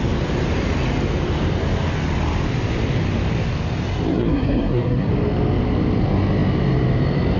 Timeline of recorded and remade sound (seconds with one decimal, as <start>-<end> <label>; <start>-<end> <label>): 0.0-4.1 recorded; 4.1-5.1 remade; 5.1-7.4 recorded